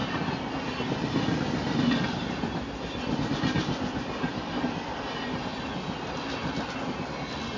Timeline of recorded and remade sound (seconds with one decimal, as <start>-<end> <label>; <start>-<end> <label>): 0.0-7.6 recorded